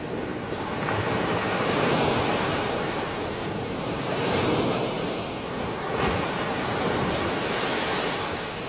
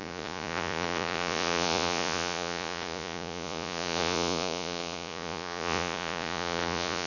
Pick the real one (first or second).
first